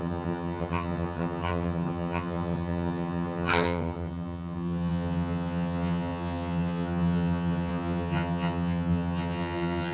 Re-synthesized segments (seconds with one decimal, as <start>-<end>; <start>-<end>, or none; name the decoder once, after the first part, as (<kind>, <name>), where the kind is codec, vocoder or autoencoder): 0.0-9.9 (vocoder, HiFi-GAN)